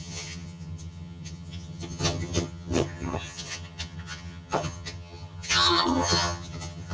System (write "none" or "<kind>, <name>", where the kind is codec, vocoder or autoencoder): vocoder, HiFi-GAN